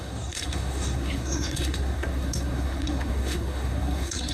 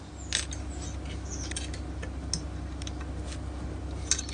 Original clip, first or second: second